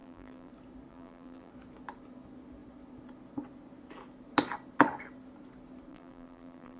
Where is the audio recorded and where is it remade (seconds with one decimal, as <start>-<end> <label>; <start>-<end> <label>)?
0.0-0.5 remade; 0.5-0.9 recorded; 0.9-1.5 remade; 1.5-5.9 recorded; 5.9-6.8 remade